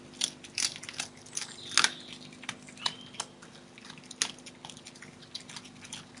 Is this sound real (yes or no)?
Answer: yes